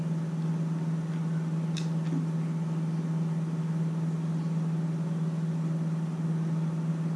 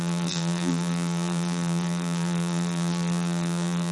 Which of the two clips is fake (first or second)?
second